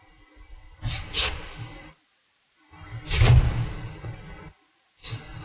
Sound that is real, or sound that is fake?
real